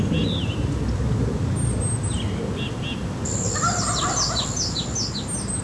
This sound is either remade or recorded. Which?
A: recorded